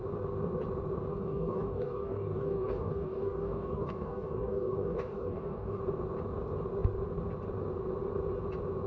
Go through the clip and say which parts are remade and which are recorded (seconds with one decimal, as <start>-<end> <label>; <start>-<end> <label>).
0.0-1.1 recorded; 1.1-5.8 remade; 5.8-8.9 recorded